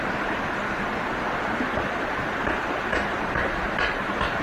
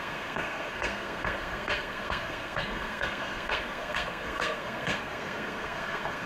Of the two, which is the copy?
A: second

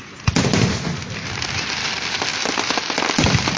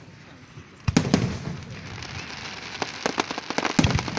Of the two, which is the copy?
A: first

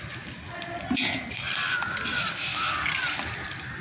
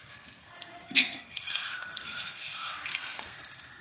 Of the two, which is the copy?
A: second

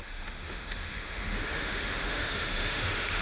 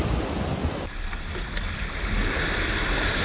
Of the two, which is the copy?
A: first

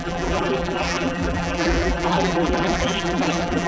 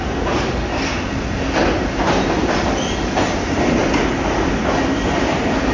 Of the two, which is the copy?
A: first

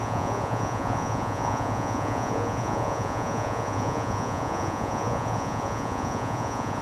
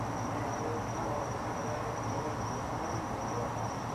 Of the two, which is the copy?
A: first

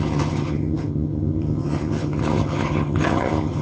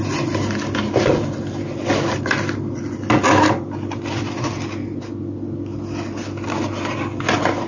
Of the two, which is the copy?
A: first